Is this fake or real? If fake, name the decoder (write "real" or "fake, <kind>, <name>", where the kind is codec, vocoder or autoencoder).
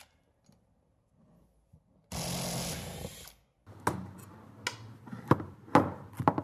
real